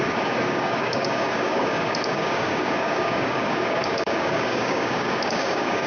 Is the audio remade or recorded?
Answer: remade